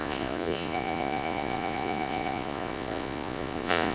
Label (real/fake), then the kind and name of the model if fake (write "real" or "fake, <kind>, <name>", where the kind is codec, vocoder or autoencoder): fake, vocoder, Vocos